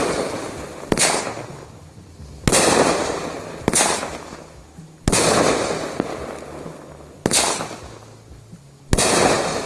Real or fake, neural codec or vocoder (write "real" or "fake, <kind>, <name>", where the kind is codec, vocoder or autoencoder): real